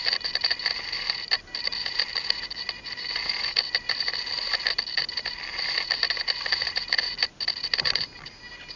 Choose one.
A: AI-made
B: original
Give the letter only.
A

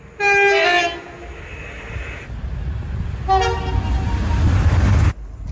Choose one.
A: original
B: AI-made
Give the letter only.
A